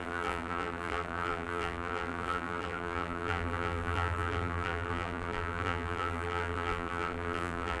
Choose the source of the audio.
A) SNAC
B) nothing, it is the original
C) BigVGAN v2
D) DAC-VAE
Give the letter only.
C